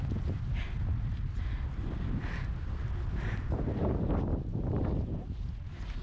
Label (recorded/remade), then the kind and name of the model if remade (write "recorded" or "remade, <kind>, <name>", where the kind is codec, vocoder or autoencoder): recorded